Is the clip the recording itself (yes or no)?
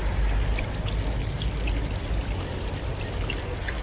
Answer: yes